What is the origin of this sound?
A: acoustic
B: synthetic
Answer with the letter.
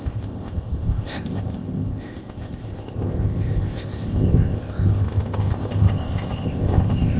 B